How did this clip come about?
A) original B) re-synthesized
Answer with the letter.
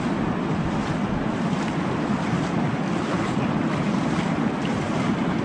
A